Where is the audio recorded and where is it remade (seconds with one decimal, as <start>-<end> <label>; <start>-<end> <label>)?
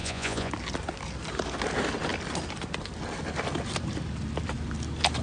0.0-0.5 remade; 0.5-5.2 recorded